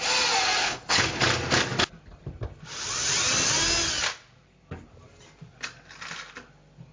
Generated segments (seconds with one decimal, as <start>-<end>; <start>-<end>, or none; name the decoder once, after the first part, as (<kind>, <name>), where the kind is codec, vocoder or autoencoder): 0.6-1.2 (codec, HILCodec)